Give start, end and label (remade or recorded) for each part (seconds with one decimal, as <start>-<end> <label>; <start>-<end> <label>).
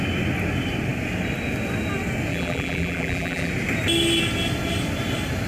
0.0-2.3 recorded; 2.3-3.5 remade; 3.5-5.5 recorded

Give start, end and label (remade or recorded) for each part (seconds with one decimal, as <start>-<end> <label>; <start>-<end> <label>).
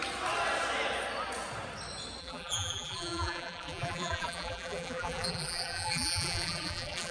0.0-2.2 recorded; 2.2-7.1 remade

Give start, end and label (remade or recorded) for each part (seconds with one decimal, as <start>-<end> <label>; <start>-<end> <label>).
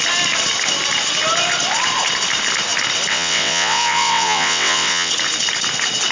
0.0-3.1 recorded; 3.1-5.1 remade; 5.1-6.1 recorded